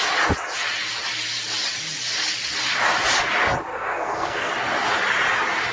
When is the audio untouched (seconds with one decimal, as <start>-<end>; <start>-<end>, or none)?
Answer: 0.0-3.7; 4.5-5.7